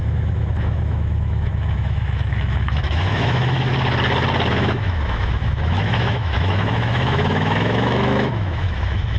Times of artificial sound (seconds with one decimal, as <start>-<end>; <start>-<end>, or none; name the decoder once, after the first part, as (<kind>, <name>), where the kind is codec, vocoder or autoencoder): 0.0-3.7 (autoencoder, DAC-VAE); 4.5-9.2